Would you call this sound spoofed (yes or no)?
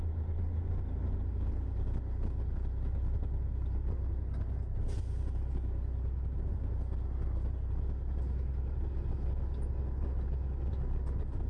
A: no